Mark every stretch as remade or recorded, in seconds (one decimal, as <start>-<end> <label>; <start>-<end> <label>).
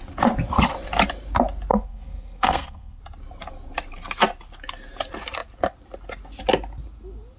0.0-1.7 recorded; 1.7-3.0 remade; 3.0-7.4 recorded